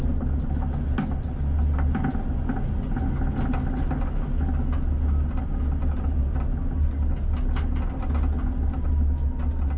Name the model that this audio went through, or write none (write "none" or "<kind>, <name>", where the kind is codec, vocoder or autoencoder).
none